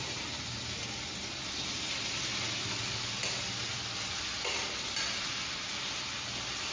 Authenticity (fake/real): real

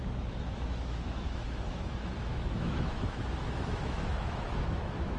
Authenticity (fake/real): fake